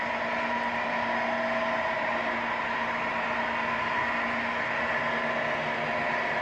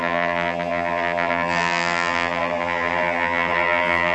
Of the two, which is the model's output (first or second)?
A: second